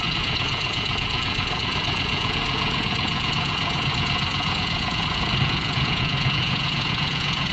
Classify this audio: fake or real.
fake